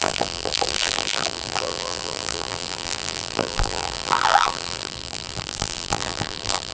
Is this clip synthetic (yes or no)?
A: yes